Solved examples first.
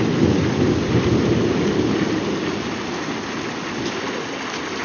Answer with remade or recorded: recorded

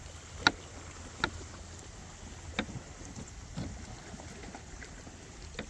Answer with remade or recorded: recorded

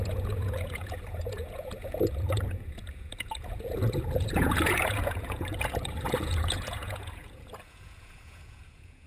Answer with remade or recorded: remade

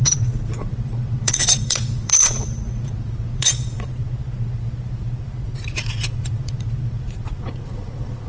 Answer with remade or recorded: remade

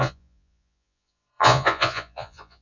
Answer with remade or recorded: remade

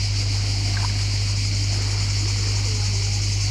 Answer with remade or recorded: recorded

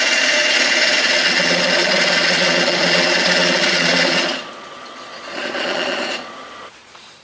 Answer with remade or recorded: remade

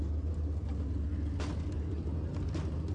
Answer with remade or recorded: recorded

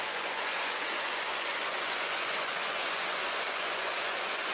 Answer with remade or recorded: remade